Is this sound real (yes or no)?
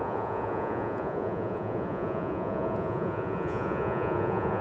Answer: no